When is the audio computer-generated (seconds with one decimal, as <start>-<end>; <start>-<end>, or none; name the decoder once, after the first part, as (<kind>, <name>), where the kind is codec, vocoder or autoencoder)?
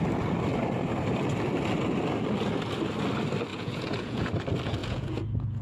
3.5-4.3 (vocoder, Vocos); 4.8-5.6